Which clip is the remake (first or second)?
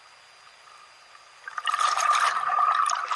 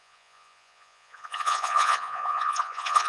second